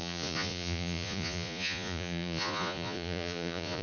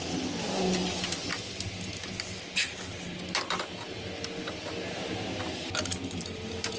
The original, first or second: second